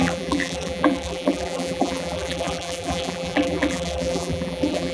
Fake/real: fake